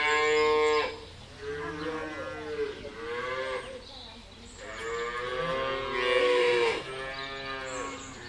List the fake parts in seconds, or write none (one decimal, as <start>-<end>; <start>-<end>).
6.2-6.9